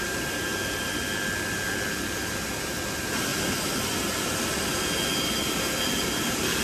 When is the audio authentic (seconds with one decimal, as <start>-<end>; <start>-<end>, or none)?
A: 0.0-3.3; 4.4-6.6

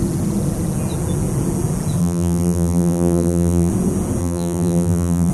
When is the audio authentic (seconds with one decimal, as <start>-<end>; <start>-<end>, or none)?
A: 0.0-2.0; 3.7-4.2

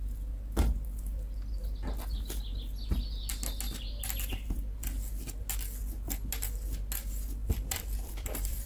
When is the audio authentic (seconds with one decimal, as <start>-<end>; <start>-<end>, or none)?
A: 0.0-7.4

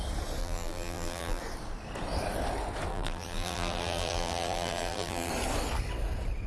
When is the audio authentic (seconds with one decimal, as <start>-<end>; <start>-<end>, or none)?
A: 0.0-0.4; 1.4-2.9; 5.3-6.5

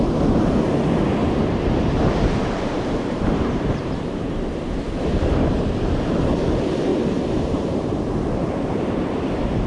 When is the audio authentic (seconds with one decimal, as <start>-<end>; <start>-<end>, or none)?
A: 0.0-1.2; 5.6-6.9; 9.1-9.7

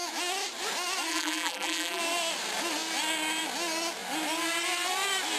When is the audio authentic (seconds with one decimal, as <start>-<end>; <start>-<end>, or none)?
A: 0.0-1.1; 2.0-5.4